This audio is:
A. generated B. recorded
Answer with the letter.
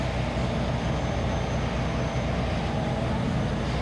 B